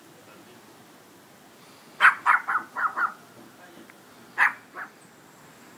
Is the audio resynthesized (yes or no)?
no